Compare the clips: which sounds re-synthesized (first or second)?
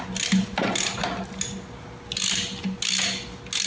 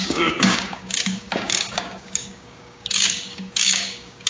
second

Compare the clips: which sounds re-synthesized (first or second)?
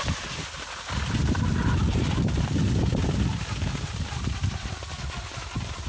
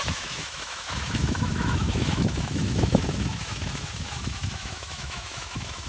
second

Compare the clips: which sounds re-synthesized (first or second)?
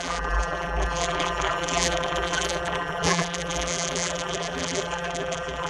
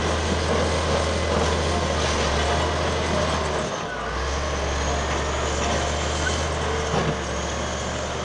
first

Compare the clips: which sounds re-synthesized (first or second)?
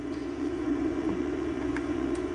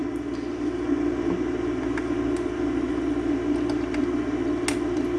first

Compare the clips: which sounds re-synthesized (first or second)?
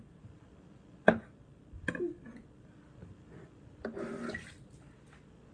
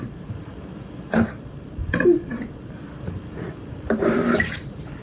second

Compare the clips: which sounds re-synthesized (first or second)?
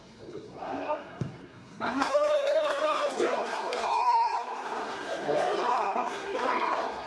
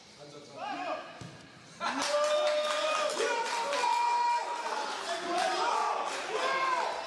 first